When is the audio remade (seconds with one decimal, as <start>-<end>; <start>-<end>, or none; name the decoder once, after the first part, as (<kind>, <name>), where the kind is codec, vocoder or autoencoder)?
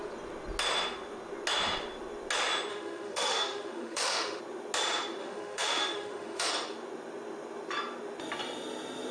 2.7-4.4 (autoencoder, DAC-VAE); 5.2-6.5